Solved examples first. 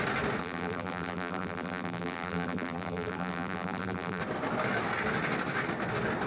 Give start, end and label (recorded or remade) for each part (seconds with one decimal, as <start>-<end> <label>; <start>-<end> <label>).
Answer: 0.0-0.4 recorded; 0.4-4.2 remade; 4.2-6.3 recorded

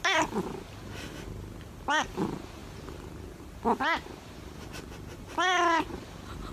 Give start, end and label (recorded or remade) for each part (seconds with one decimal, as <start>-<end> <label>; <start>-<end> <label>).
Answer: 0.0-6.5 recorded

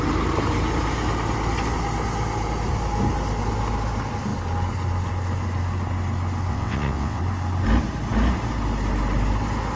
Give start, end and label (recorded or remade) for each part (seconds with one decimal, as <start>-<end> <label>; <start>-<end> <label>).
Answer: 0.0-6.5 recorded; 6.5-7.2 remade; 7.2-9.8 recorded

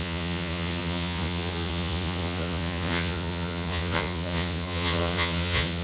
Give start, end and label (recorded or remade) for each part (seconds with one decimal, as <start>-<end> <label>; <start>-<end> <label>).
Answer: 0.0-5.8 remade

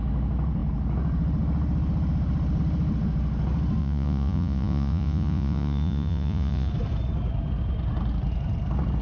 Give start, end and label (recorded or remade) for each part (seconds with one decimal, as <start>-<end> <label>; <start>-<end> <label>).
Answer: 0.0-3.8 recorded; 3.8-6.7 remade; 6.7-9.0 recorded

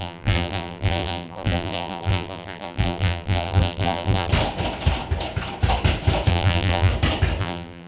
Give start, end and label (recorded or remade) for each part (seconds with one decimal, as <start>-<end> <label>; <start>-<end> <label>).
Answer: 0.0-4.3 remade; 4.3-6.3 recorded; 6.3-6.9 remade; 6.9-7.4 recorded; 7.4-7.9 remade

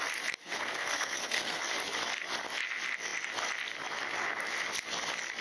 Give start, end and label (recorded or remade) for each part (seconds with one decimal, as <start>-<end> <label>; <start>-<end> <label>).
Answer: 0.0-0.4 recorded; 0.4-1.6 remade; 1.6-5.4 recorded

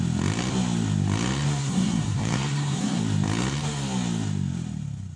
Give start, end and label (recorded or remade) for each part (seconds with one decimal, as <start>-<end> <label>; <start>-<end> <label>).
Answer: 0.0-1.6 recorded; 1.6-3.0 remade; 3.0-5.2 recorded